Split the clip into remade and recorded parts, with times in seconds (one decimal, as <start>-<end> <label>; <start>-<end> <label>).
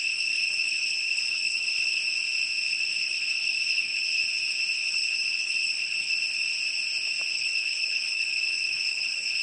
0.0-2.0 remade; 2.0-2.7 recorded; 2.7-4.2 remade; 4.2-4.8 recorded; 4.8-6.2 remade; 6.2-7.3 recorded; 7.3-9.4 remade